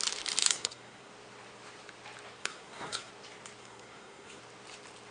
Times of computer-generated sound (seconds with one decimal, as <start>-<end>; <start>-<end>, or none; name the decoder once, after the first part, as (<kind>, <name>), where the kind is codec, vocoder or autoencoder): 0.4-1.1 (codec, SNAC); 2.4-3.1; 3.6-4.4